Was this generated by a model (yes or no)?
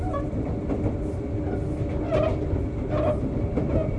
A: no